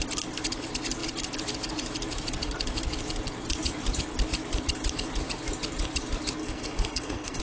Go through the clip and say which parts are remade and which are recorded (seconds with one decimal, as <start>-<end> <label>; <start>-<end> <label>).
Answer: 0.0-6.4 recorded; 6.4-7.4 remade